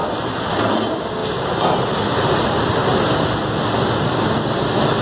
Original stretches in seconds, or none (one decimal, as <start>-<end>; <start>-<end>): 0.0-5.0